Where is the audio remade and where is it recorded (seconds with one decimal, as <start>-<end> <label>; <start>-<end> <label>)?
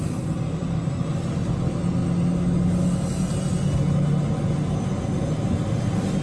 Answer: 0.0-6.2 recorded